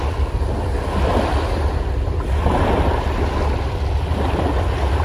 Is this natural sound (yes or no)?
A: yes